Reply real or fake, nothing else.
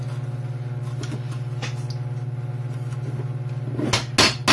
real